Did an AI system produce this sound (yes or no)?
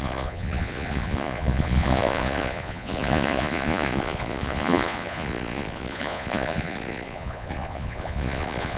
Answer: yes